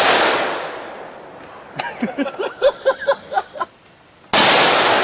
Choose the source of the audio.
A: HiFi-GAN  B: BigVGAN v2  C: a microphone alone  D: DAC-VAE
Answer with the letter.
C